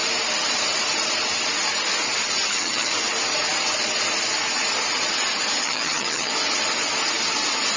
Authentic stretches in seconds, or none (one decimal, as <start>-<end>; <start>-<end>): 0.0-2.5; 2.9-5.6; 6.3-7.8